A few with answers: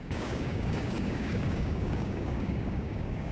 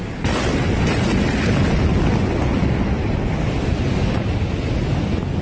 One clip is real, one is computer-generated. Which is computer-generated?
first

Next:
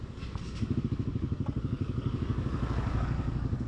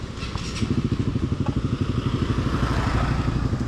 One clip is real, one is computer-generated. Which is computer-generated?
first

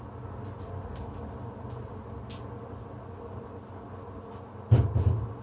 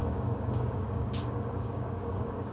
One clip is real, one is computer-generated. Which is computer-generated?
second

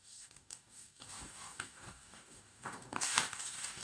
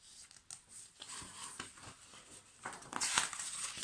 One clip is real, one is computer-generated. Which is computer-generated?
first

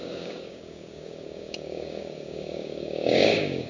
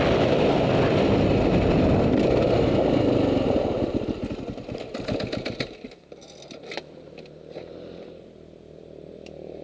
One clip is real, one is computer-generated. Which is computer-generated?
first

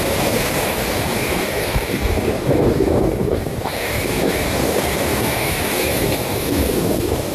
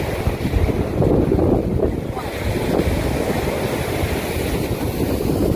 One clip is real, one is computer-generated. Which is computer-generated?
first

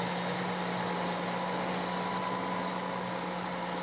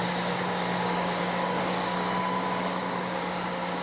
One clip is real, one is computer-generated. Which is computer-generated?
second